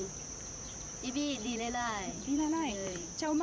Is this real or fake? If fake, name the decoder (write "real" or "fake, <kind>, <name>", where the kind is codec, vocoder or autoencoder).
fake, vocoder, BigVGAN v2